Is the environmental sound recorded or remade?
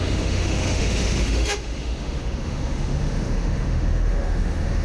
remade